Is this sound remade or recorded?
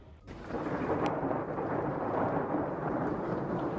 remade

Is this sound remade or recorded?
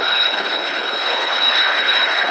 remade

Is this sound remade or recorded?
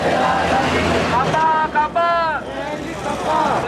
recorded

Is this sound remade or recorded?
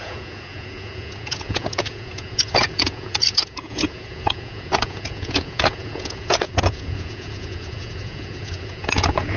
remade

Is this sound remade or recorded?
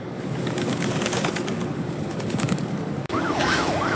remade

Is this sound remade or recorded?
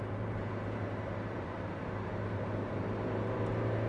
remade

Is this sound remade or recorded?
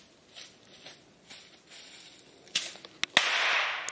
recorded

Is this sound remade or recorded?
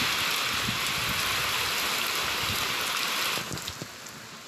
recorded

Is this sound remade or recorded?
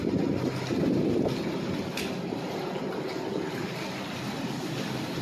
recorded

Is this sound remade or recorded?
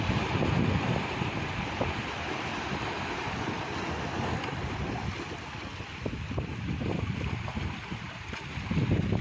recorded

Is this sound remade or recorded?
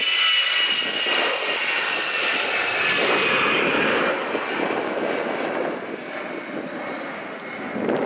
recorded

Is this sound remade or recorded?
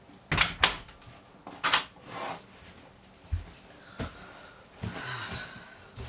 recorded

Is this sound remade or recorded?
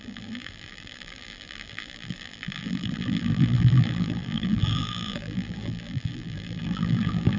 remade